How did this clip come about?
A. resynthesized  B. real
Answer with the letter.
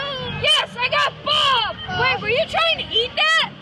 B